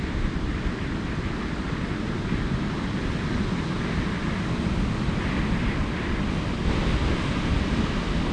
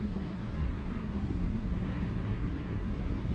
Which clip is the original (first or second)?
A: first